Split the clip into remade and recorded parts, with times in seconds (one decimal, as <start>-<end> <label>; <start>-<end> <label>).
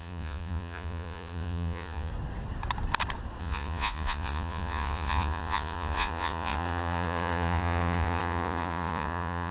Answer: 0.0-2.1 remade; 2.1-3.4 recorded; 3.4-9.5 remade